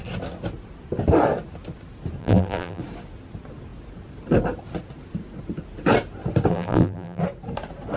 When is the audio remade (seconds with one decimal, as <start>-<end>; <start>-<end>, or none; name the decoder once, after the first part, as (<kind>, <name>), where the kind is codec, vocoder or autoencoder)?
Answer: 2.2-2.8 (vocoder, BigVGAN v2); 6.5-7.2